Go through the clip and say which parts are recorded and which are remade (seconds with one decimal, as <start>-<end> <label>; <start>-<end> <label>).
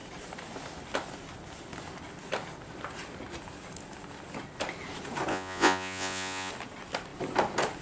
0.0-5.3 recorded; 5.3-6.5 remade; 6.5-7.8 recorded